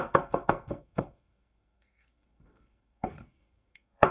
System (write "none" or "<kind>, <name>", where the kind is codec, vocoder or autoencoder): codec, SNAC